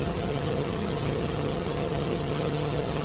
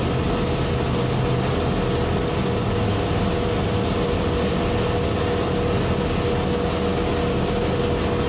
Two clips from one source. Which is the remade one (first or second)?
first